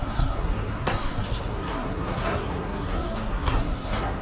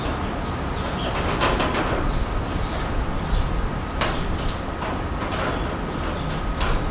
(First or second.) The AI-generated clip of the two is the first